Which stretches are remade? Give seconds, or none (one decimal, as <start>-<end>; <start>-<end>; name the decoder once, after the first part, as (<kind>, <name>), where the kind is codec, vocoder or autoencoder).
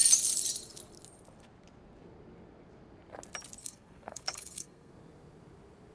3.6-4.9 (codec, SNAC)